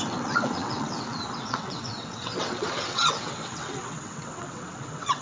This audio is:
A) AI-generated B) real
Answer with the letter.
A